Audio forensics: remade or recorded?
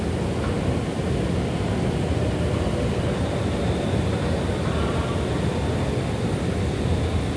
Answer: recorded